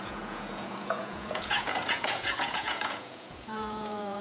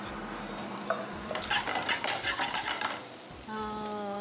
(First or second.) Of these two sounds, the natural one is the second